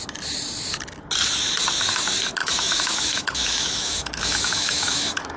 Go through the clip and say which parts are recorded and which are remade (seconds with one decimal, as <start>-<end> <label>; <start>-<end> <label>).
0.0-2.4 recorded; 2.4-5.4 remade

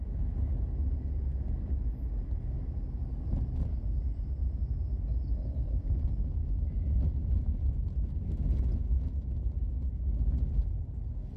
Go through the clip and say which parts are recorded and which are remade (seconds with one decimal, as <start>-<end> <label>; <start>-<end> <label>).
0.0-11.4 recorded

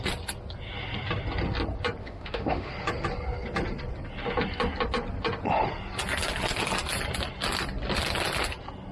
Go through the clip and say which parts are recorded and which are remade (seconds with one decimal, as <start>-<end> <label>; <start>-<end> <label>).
0.0-2.0 recorded; 2.0-2.7 remade; 2.7-8.9 recorded

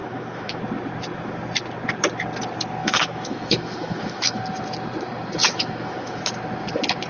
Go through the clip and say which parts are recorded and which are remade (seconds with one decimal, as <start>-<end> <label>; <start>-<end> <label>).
0.0-0.6 remade; 0.6-2.8 recorded; 2.8-4.4 remade; 4.4-5.4 recorded; 5.4-6.2 remade; 6.2-7.1 recorded